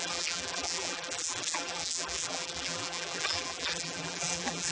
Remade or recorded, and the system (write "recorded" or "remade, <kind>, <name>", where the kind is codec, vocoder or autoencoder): remade, vocoder, BigVGAN v2